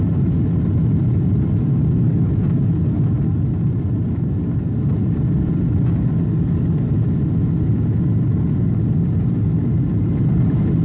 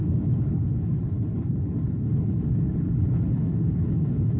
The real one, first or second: first